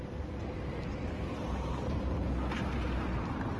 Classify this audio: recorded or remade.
recorded